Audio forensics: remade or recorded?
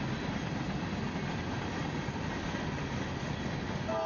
recorded